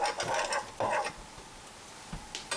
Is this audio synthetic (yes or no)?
no